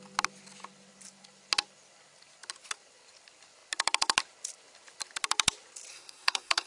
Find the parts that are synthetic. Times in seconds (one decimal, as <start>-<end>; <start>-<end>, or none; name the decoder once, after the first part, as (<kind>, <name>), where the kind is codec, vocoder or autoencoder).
5.9-6.7 (codec, SNAC)